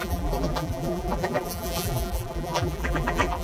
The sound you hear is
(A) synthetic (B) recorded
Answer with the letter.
A